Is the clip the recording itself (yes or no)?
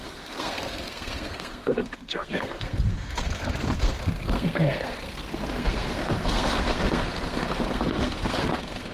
no